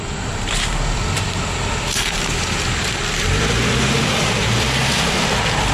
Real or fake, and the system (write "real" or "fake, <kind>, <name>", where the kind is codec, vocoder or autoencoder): fake, vocoder, BigVGAN v2